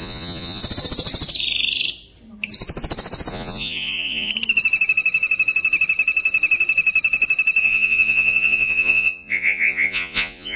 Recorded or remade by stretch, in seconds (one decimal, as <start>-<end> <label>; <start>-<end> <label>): 0.0-0.6 remade; 0.6-3.3 recorded; 3.3-4.3 remade; 4.3-7.6 recorded; 7.6-10.6 remade